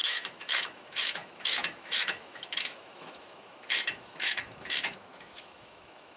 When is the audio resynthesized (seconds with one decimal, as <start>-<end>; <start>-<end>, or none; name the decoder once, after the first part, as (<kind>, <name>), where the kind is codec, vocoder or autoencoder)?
0.0-6.2 (autoencoder, DAC-VAE)